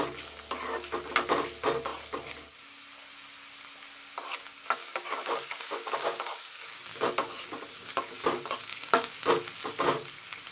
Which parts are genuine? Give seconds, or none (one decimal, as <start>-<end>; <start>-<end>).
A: 0.0-4.8; 7.1-8.7; 9.2-10.5